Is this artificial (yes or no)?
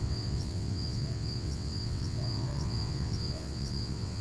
yes